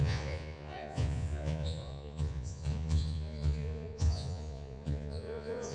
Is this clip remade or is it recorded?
remade